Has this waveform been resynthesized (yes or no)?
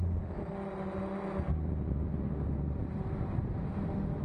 no